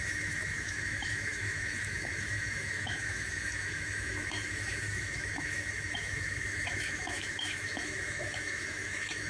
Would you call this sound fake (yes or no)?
yes